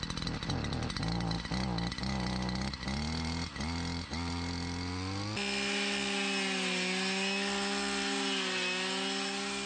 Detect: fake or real real